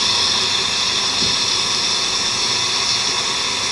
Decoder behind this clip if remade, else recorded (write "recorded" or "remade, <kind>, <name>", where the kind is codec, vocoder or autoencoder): recorded